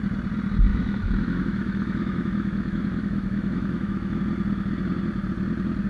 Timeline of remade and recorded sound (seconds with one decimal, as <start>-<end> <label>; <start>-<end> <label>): 0.0-0.7 recorded; 0.7-4.2 remade; 4.2-5.9 recorded